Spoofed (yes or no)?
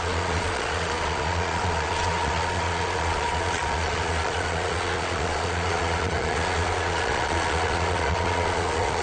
yes